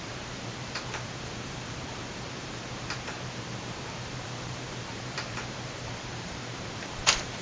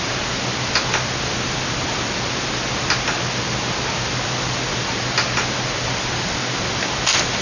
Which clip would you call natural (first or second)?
second